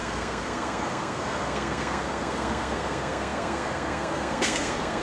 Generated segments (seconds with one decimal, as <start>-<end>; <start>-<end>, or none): 0.0-5.0